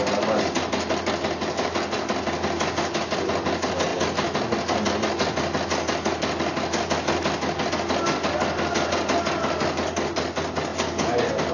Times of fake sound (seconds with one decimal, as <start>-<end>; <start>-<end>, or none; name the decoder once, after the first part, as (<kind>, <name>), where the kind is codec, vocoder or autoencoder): none

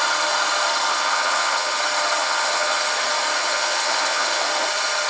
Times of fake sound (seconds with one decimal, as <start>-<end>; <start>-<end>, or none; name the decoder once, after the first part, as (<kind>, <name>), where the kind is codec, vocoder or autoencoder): 0.9-1.8 (vocoder, HiFi-GAN); 2.2-2.8; 3.4-4.4

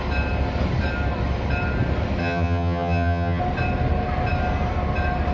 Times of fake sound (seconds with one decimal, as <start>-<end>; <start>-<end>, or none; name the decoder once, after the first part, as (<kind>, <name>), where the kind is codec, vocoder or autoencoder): 2.2-3.4 (vocoder, HiFi-GAN)